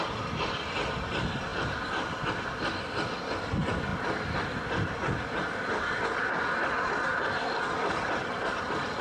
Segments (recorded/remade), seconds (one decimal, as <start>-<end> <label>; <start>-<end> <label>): 0.0-9.0 recorded